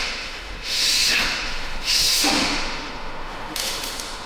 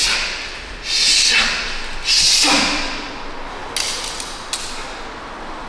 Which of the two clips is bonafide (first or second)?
second